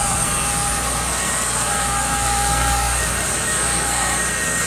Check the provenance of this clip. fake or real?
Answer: fake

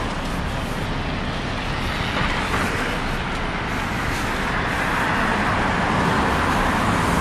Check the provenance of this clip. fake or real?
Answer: real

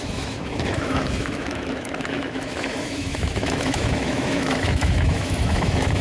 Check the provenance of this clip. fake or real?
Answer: fake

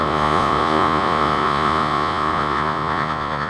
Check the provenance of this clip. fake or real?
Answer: fake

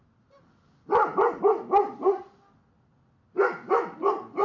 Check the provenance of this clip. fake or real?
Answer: real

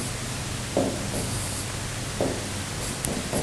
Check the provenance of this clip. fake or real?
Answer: real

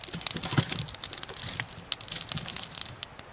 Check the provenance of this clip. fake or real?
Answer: real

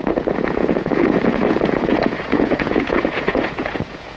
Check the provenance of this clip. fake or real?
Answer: fake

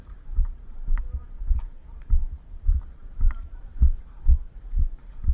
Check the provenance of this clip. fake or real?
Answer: fake